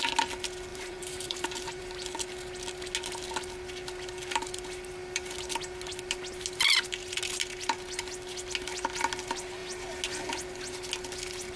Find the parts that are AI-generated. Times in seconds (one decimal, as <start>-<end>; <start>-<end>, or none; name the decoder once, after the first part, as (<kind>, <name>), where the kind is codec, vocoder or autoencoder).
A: 0.7-1.8 (vocoder, BigVGAN v2)